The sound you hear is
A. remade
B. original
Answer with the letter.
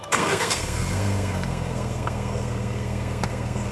A